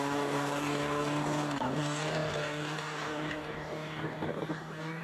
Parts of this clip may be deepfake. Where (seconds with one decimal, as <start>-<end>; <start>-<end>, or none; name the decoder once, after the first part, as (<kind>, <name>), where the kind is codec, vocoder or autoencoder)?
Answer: 0.0-5.0 (codec, DAC)